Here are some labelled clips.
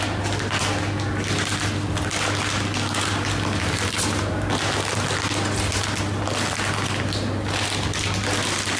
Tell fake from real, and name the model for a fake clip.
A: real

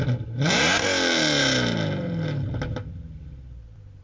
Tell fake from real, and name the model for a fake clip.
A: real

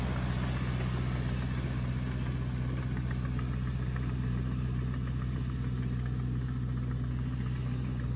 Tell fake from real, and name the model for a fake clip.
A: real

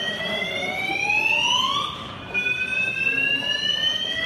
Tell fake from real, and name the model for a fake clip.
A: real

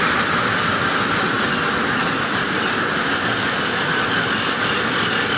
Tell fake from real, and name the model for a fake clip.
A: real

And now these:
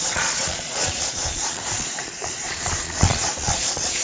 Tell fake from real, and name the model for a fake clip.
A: fake, vocoder, Vocos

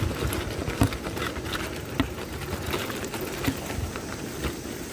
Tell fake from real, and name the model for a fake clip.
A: real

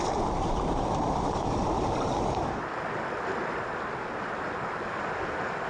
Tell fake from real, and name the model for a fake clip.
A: real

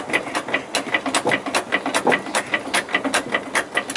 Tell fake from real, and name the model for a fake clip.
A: real